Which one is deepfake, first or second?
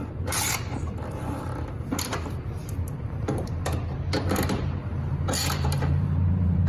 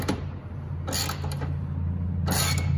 first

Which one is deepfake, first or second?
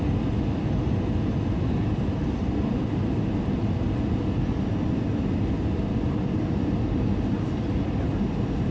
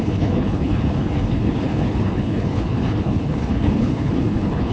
second